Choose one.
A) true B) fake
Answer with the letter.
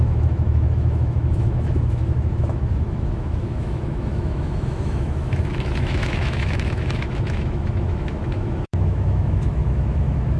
B